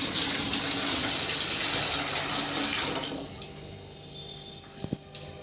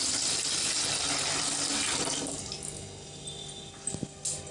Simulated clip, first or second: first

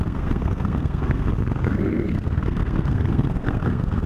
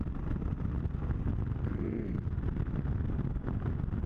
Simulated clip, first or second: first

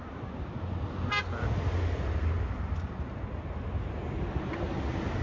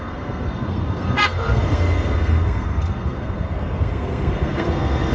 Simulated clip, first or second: second